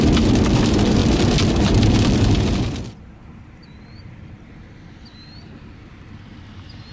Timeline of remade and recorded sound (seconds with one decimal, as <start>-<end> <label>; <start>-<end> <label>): 0.0-6.9 remade